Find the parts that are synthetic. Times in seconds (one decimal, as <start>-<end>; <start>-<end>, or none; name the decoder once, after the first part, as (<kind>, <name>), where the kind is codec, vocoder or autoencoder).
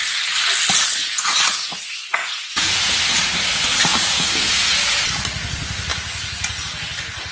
1.0-1.8 (vocoder, Vocos); 2.2-2.9; 3.9-4.7